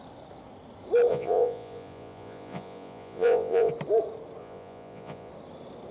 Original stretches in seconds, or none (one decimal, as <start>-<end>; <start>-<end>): 0.0-1.1; 3.7-4.4; 5.3-5.9